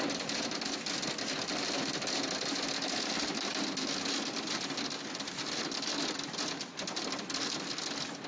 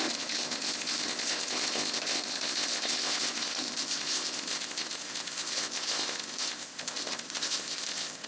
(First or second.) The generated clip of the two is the second